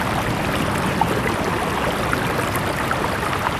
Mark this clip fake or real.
real